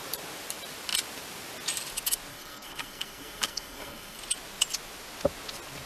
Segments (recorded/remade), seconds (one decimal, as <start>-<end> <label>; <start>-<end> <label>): 0.0-2.3 recorded; 2.3-4.2 remade; 4.2-5.9 recorded